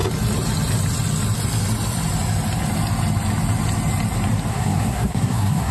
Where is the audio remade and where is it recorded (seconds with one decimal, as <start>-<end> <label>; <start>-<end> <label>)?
0.0-4.5 recorded; 4.5-5.7 remade